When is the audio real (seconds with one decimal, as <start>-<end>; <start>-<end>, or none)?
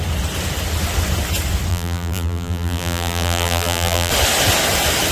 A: 0.0-1.7; 4.1-5.1